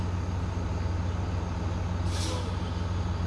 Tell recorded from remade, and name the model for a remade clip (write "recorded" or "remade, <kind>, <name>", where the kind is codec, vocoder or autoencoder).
recorded